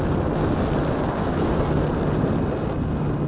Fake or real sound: real